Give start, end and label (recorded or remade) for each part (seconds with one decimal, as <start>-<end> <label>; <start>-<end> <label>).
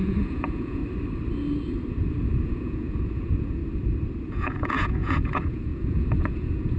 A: 0.0-0.8 remade; 0.8-2.4 recorded; 2.4-3.6 remade; 3.6-4.2 recorded; 4.2-6.8 remade